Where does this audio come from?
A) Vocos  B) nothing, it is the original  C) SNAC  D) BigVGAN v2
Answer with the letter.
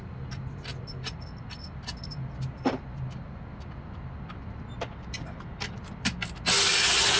B